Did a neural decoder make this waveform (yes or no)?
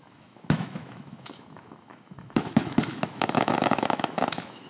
yes